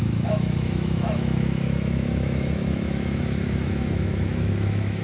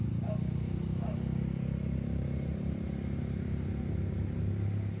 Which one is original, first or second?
second